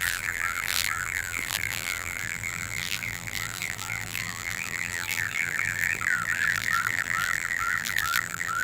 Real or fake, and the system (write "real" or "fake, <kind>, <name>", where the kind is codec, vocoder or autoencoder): fake, vocoder, BigVGAN v2